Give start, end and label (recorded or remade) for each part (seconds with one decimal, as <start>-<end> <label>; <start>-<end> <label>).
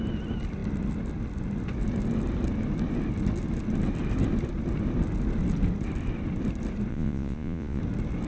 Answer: 0.0-6.9 recorded; 6.9-7.8 remade; 7.8-8.3 recorded